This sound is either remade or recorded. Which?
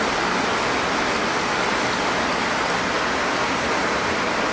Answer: recorded